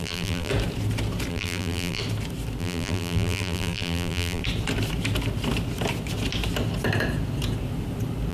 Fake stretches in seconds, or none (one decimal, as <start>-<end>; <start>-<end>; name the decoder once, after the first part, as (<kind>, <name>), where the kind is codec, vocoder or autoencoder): 0.0-0.5 (vocoder, BigVGAN v2); 1.3-2.0; 2.6-4.4